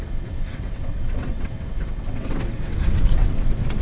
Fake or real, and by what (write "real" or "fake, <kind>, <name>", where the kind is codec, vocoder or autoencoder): fake, vocoder, WaveNeXt